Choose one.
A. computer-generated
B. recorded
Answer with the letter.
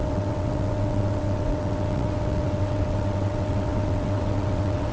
A